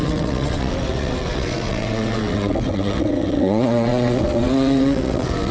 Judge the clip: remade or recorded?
remade